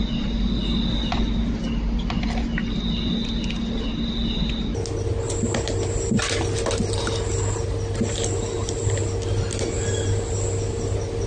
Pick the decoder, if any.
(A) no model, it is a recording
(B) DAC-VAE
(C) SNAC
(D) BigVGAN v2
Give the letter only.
A